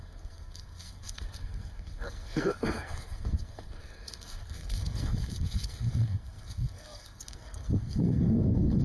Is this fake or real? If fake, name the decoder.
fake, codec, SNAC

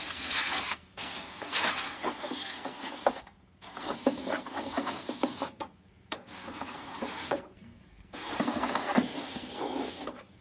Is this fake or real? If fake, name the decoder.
fake, codec, SNAC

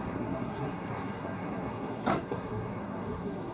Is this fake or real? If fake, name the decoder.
fake, codec, SNAC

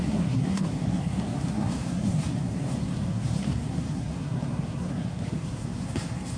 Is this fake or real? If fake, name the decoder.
fake, codec, SNAC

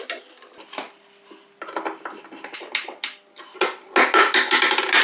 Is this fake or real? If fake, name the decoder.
real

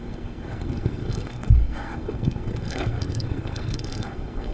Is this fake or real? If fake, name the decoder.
fake, codec, SNAC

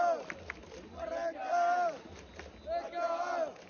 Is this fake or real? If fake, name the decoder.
real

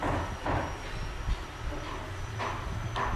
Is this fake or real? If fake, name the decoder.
real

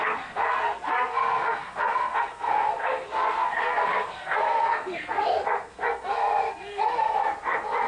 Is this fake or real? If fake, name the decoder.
fake, codec, SNAC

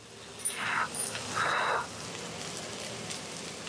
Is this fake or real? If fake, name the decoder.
real